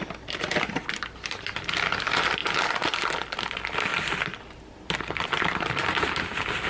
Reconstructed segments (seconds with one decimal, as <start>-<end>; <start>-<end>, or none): none